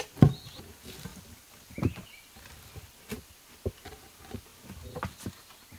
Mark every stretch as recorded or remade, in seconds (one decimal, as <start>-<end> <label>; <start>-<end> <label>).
0.0-5.8 recorded